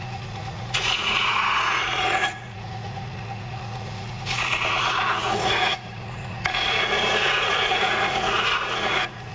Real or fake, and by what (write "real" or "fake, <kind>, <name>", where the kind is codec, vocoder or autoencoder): fake, vocoder, Vocos